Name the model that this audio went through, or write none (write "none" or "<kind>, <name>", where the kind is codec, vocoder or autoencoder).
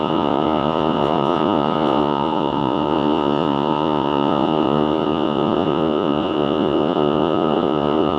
vocoder, Vocos